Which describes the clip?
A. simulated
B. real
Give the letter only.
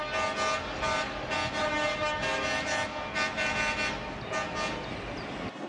B